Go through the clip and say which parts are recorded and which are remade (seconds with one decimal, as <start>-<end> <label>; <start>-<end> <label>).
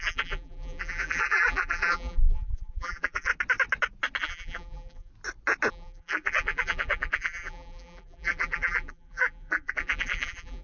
0.0-3.3 remade; 3.3-4.2 recorded; 4.2-5.1 remade; 5.1-5.7 recorded; 5.7-10.6 remade